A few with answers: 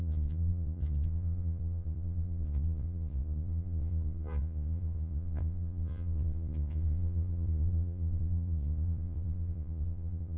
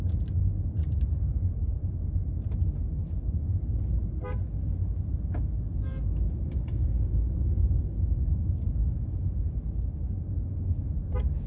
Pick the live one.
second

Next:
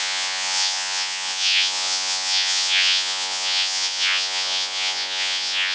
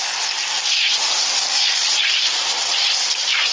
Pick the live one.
second